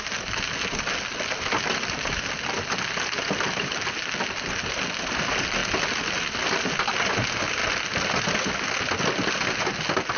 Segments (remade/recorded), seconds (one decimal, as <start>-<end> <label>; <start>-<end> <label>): 0.0-10.2 recorded